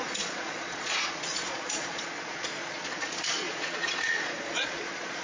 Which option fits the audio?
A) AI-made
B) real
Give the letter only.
A